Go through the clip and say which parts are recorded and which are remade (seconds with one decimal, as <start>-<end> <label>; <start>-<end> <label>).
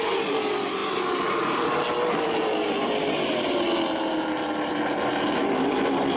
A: 0.0-6.2 recorded